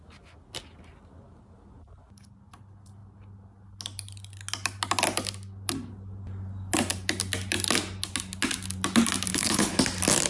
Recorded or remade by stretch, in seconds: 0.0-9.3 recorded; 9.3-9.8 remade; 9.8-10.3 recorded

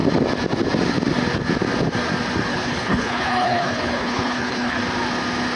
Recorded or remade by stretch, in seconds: 0.0-2.5 recorded; 2.5-4.8 remade; 4.8-5.6 recorded

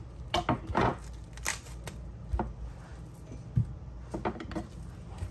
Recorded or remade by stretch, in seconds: 0.0-5.3 recorded

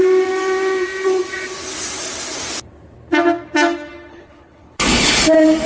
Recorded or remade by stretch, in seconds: 0.0-4.1 recorded; 4.1-5.2 remade; 5.2-5.7 recorded

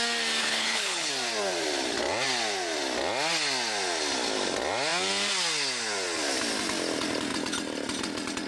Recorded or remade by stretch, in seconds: 0.0-0.4 recorded; 0.4-1.1 remade; 1.1-8.5 recorded

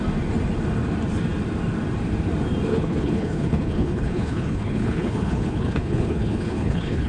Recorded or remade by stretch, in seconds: 0.0-2.7 recorded; 2.7-7.1 remade

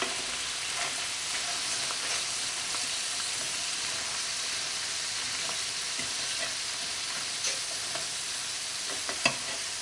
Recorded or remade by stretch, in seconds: 0.0-9.8 recorded

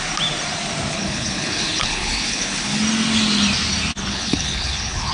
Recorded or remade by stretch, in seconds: 0.0-0.9 recorded; 0.9-2.8 remade; 2.8-4.1 recorded; 4.1-5.1 remade